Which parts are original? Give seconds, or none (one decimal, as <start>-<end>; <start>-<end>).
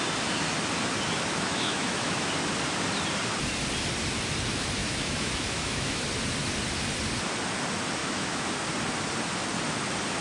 0.0-1.3; 2.3-4.8; 6.0-8.0; 8.5-10.2